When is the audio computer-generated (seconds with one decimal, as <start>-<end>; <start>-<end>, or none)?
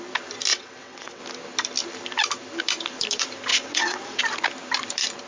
0.5-1.2; 3.5-4.2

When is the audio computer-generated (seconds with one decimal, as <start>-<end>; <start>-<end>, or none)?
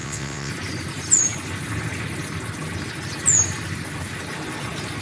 0.0-0.5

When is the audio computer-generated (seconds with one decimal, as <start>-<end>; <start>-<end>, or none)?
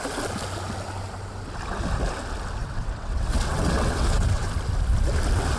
2.6-4.5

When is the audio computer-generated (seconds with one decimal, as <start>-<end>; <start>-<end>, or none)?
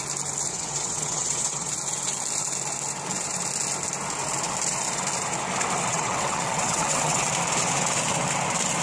0.5-1.7; 5.9-7.3